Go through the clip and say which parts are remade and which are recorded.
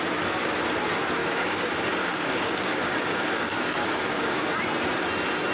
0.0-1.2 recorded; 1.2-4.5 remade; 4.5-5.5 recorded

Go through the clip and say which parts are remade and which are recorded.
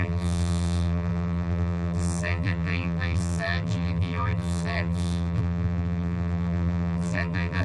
0.0-7.6 remade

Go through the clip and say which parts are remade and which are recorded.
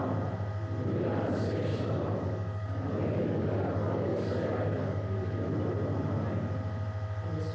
0.0-1.7 recorded; 1.7-5.5 remade; 5.5-7.5 recorded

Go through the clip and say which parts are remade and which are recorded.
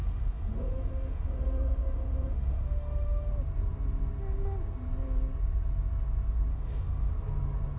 0.0-3.3 remade; 3.3-6.5 recorded; 6.5-7.1 remade; 7.1-7.8 recorded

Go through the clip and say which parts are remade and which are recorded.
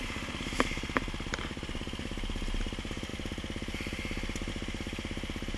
0.0-5.6 recorded